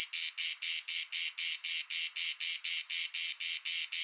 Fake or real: real